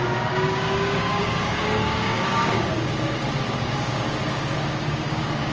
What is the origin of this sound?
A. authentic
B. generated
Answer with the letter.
B